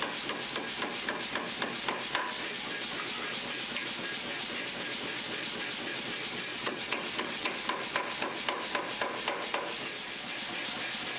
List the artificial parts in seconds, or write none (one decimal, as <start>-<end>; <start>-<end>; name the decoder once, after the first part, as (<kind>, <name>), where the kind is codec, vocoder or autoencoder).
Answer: 6.5-7.5 (vocoder, WaveNeXt)